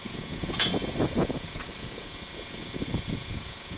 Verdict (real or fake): fake